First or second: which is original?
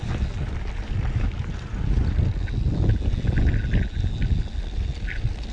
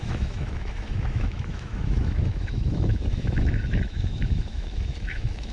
first